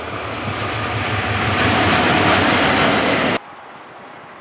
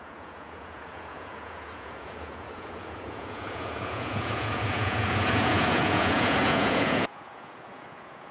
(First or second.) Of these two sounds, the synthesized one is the second